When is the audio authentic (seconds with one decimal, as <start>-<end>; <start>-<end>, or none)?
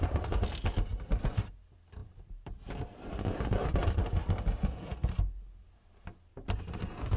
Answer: 0.0-2.0; 3.1-6.3; 6.8-7.2